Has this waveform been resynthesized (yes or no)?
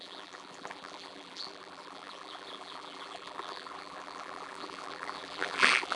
yes